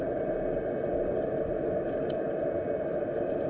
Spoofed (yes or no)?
no